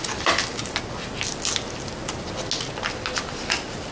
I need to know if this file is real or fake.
real